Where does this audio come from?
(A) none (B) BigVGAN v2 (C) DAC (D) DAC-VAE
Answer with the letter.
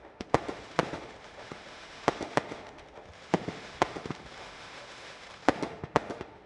D